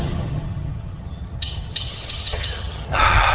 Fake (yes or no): yes